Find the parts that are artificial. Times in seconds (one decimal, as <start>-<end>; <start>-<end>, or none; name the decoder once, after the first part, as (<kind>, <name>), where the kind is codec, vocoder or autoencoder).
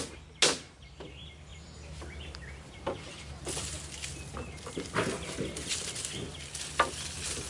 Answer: none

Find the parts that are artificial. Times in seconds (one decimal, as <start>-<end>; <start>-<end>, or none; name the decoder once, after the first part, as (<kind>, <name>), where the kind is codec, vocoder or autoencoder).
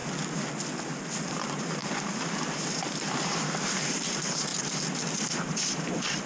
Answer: 1.3-4.5 (vocoder, BigVGAN v2); 5.2-6.3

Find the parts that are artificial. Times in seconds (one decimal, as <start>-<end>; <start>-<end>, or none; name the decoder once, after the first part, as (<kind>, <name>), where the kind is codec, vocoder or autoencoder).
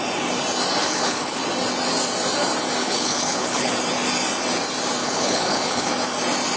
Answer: 0.8-1.4 (codec, HILCodec); 2.8-3.7; 5.0-5.9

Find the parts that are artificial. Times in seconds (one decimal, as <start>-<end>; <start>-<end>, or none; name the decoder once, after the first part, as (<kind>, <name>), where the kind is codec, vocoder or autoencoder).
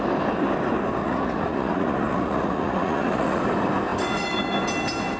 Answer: 1.0-3.4 (vocoder, Vocos)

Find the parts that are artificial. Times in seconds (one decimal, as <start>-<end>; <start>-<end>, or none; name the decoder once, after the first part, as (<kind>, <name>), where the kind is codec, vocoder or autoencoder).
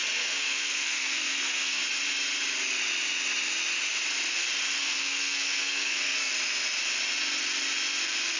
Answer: 0.0-1.8 (codec, SNAC); 4.8-6.3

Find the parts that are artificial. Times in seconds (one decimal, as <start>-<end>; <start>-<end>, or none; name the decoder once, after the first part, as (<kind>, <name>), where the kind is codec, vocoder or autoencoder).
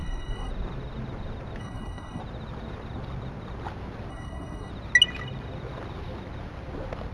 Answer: 0.0-0.5 (codec, SNAC); 1.6-2.2; 4.1-4.7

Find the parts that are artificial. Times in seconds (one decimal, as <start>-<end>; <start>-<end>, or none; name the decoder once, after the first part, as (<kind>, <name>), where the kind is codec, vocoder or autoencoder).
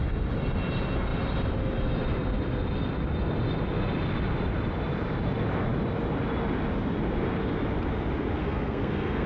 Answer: 8.4-9.3 (codec, SNAC)